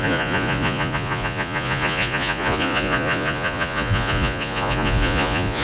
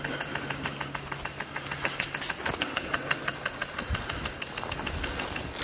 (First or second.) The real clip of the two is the second